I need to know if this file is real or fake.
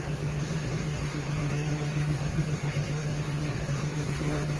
fake